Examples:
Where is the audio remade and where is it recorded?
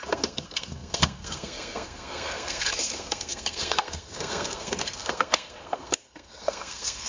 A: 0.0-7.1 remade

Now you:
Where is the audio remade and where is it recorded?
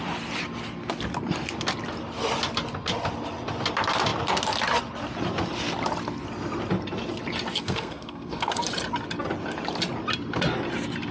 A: 0.0-7.6 recorded; 7.6-8.6 remade; 8.6-11.1 recorded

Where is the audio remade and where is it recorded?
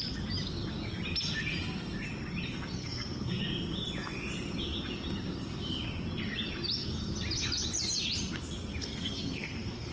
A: 0.0-2.8 recorded; 2.8-3.4 remade; 3.4-8.8 recorded; 8.8-9.9 remade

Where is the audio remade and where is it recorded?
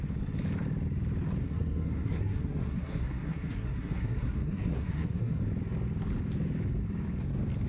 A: 0.0-1.4 recorded; 1.4-5.4 remade; 5.4-7.7 recorded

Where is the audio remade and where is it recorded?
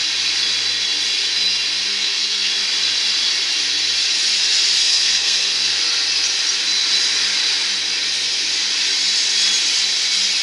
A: 0.0-1.9 recorded; 1.9-2.5 remade; 2.5-4.8 recorded; 4.8-5.8 remade; 5.8-10.4 recorded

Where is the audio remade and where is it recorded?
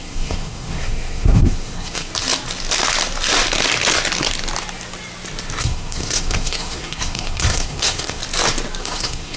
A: 0.0-2.1 remade; 2.1-5.6 recorded; 5.6-8.2 remade; 8.2-8.8 recorded; 8.8-9.4 remade